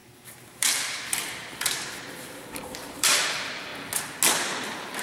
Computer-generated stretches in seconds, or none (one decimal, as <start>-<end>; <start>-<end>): 0.0-3.7; 4.3-5.0